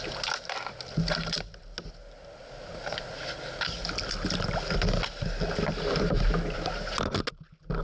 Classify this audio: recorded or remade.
recorded